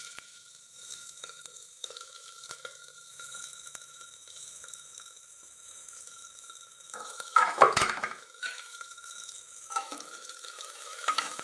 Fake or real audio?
fake